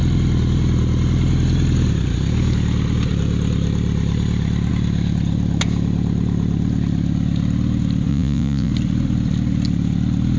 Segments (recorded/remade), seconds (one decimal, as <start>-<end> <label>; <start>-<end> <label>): 0.0-8.1 recorded; 8.1-8.7 remade; 8.7-10.4 recorded